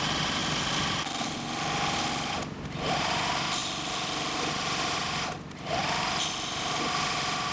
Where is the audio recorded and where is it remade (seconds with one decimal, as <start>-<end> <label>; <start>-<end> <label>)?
0.0-7.5 recorded